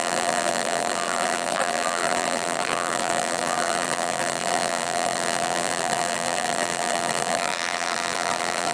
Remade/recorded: remade